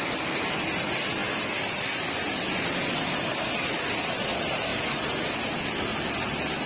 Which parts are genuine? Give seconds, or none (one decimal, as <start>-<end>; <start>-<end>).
0.0-6.7